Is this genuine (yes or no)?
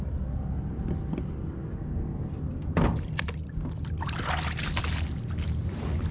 yes